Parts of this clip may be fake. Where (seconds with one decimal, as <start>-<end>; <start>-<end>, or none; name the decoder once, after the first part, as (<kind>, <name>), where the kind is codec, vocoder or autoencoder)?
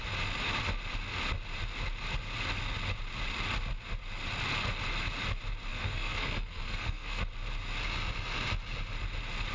5.7-7.2 (codec, SNAC)